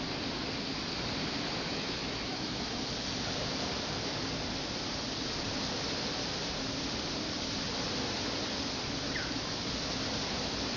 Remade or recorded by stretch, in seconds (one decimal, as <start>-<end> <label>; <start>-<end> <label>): 0.0-1.7 recorded; 1.7-2.8 remade; 2.8-10.8 recorded